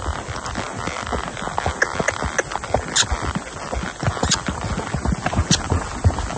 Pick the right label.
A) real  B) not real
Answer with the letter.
A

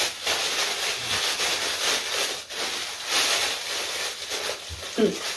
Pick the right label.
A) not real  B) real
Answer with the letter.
B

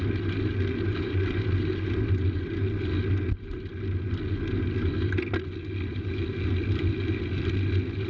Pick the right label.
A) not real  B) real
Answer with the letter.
B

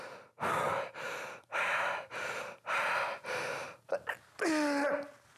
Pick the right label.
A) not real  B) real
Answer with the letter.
B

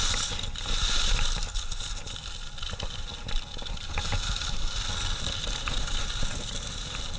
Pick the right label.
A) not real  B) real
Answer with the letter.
B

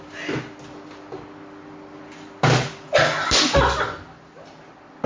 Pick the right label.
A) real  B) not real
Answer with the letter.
A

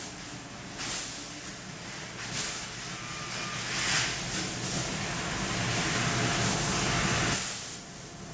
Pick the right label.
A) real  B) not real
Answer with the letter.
A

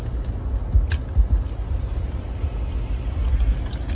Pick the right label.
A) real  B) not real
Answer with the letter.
A